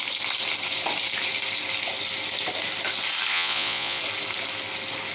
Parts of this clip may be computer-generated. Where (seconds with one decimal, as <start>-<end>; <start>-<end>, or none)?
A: 3.3-4.0